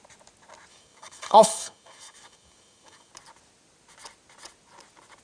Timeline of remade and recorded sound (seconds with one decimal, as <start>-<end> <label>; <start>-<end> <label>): 0.0-0.7 recorded; 0.7-3.1 remade; 3.1-5.2 recorded